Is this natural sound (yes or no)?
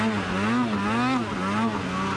yes